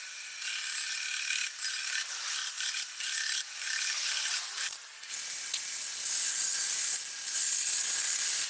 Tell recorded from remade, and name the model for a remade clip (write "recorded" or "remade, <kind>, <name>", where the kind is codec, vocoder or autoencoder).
recorded